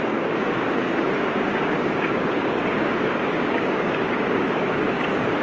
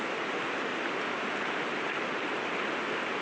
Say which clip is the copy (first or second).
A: first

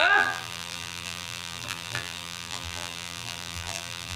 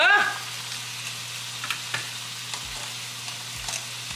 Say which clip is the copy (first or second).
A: first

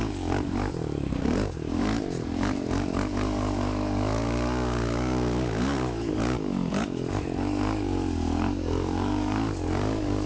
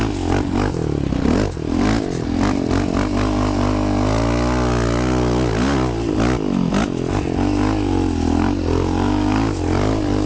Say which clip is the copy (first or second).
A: first